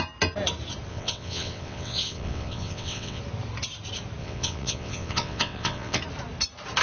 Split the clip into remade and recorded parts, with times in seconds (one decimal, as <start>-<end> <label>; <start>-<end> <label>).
0.0-0.9 recorded; 0.9-3.2 remade; 3.2-4.2 recorded; 4.2-6.0 remade; 6.0-6.8 recorded